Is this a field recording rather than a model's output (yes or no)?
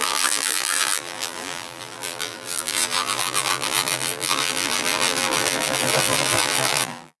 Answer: no